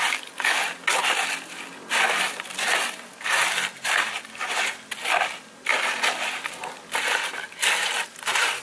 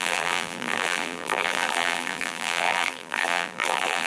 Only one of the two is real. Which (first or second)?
first